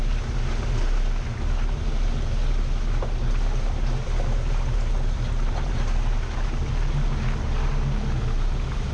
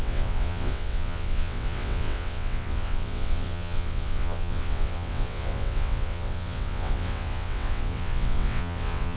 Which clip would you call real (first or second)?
first